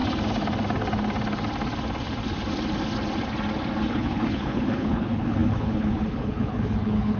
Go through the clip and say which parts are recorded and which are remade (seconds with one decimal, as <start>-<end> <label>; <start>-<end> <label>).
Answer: 0.0-3.9 recorded; 3.9-7.2 remade